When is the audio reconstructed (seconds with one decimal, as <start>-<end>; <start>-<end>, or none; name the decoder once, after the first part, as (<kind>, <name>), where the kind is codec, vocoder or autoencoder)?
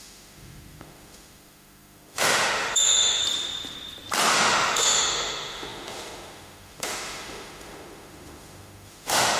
0.0-3.2 (autoencoder, DAC-VAE); 4.3-9.4